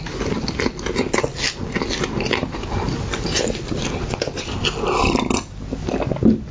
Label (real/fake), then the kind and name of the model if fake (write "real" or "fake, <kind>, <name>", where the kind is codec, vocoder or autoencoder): real